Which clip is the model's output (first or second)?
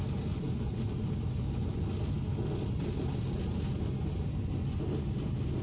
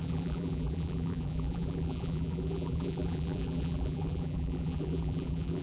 second